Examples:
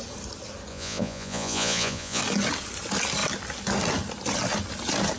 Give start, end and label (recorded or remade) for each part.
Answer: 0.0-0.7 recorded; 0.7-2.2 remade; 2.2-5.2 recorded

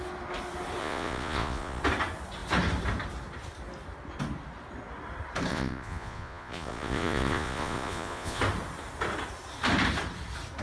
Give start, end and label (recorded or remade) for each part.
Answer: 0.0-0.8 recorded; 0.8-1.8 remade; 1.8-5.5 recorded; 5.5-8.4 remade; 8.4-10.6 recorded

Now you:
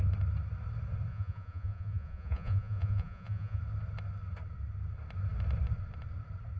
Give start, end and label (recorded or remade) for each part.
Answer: 0.0-1.1 recorded; 1.1-3.6 remade; 3.6-6.6 recorded

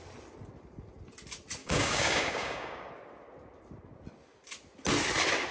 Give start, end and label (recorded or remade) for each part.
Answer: 0.0-1.6 recorded; 1.6-2.9 remade; 2.9-5.5 recorded